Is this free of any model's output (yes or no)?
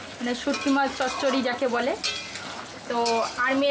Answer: yes